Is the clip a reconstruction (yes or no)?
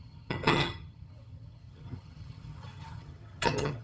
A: yes